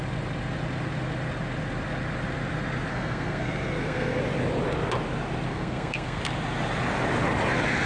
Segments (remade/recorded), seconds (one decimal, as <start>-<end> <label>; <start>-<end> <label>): 0.0-2.9 recorded; 2.9-4.2 remade; 4.2-5.5 recorded; 5.5-6.2 remade; 6.2-7.9 recorded